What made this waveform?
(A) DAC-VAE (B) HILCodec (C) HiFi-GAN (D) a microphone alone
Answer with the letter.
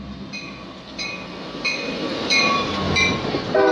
D